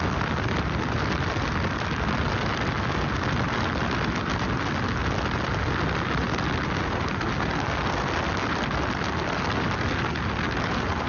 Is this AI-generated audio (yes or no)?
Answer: no